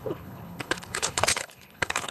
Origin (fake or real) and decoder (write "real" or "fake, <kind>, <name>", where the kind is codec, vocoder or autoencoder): fake, codec, HILCodec